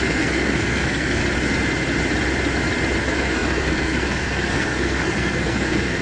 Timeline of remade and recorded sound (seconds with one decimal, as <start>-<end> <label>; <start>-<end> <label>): 0.0-1.2 remade; 1.2-3.0 recorded; 3.0-6.0 remade